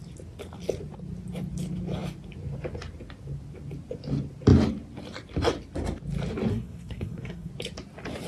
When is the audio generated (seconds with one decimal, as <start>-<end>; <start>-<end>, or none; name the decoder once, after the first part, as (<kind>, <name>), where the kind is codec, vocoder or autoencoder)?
6.5-7.5 (codec, SNAC)